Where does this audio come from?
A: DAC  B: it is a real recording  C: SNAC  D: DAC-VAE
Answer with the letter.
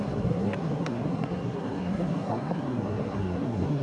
C